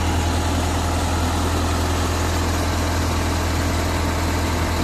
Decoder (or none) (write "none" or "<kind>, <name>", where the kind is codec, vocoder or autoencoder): none